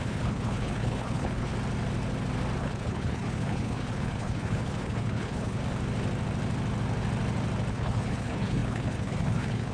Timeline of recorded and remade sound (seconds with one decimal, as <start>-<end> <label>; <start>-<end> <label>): 0.0-1.5 remade; 1.5-2.6 recorded; 2.6-5.6 remade; 5.6-7.7 recorded; 7.7-9.7 remade